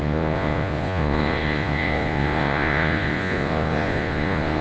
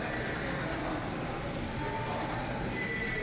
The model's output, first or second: first